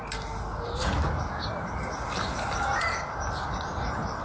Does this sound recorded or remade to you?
recorded